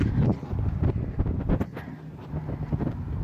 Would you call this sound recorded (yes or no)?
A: yes